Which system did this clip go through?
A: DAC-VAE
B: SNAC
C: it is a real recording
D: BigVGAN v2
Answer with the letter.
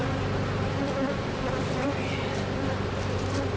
C